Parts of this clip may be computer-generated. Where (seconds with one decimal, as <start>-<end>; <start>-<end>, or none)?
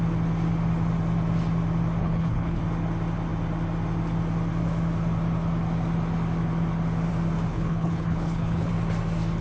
2.0-2.6; 7.5-8.7